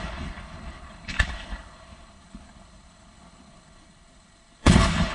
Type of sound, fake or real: fake